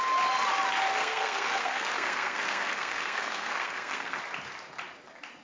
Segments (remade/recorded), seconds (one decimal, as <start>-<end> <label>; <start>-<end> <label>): 0.0-1.0 recorded; 1.0-4.2 remade; 4.2-5.4 recorded